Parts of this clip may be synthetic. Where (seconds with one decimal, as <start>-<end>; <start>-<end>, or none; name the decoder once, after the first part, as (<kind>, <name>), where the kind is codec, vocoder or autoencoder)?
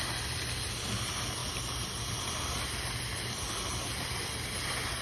1.4-4.4 (vocoder, BigVGAN v2)